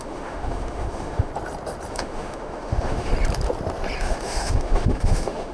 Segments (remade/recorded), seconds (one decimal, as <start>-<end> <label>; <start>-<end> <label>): 0.0-1.3 remade; 1.3-1.9 recorded; 1.9-3.1 remade; 3.1-4.0 recorded; 4.0-5.5 remade

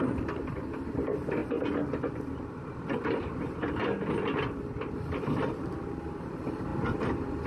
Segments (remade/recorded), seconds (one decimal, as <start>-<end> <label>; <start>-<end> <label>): 0.0-1.4 remade; 1.4-2.1 recorded; 2.1-7.5 remade

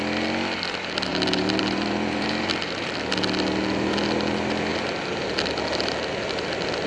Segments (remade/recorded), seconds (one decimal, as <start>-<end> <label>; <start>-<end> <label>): 0.0-1.1 recorded; 1.1-2.5 remade; 2.5-6.9 recorded

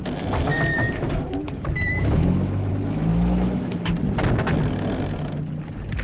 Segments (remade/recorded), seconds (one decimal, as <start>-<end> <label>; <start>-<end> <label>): 0.0-0.7 recorded; 0.7-2.7 remade; 2.7-3.1 recorded; 3.1-3.9 remade; 3.9-6.0 recorded

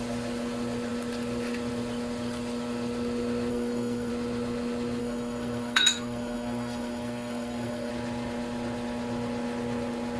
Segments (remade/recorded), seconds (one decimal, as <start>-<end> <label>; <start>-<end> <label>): 0.0-3.5 recorded; 3.5-4.1 remade; 4.1-5.0 recorded; 5.0-7.9 remade; 7.9-10.2 recorded

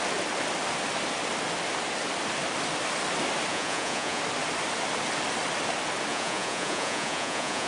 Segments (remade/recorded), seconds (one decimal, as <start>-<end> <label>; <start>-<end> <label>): 0.0-3.5 recorded; 3.5-4.2 remade; 4.2-6.1 recorded; 6.1-7.7 remade